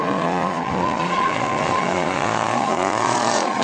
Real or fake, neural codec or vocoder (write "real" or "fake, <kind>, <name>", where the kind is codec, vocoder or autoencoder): fake, vocoder, Vocos